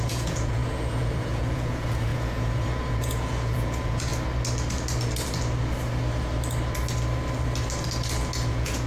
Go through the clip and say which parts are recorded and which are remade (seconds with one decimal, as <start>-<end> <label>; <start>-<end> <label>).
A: 0.0-4.1 remade; 4.1-8.5 recorded; 8.5-8.9 remade